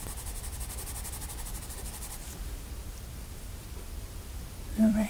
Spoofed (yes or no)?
yes